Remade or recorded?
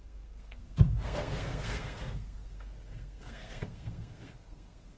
remade